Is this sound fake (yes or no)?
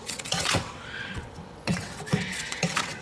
yes